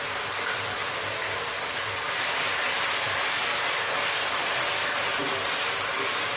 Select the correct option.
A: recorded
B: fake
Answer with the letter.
A